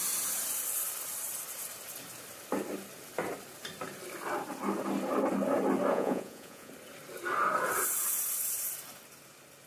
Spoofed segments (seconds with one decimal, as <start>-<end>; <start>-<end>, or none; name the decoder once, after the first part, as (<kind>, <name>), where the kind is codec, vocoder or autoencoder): 5.9-6.7 (vocoder, Vocos)